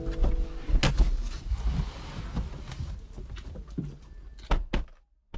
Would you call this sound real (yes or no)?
yes